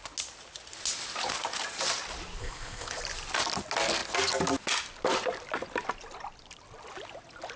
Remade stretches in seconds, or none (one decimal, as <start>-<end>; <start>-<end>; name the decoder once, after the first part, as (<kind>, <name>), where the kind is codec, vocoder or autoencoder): 2.4-3.0 (codec, ZipCodec)